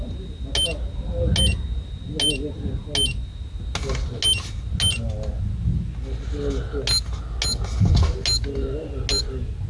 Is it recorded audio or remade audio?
recorded